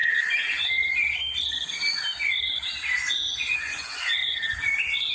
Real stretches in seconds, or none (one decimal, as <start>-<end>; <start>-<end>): 0.0-3.1; 4.2-5.1